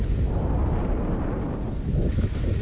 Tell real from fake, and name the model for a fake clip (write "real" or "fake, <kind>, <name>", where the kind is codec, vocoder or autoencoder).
real